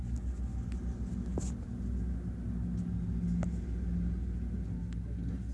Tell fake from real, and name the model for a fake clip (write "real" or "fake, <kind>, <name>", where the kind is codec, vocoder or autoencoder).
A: real